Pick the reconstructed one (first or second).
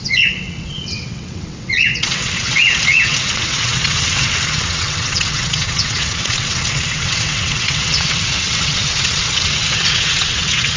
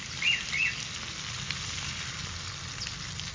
first